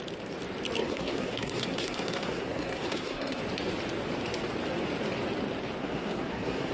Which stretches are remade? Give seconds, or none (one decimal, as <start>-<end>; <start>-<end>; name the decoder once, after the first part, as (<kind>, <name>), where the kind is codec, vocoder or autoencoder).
0.8-3.4 (codec, SNAC); 5.8-6.7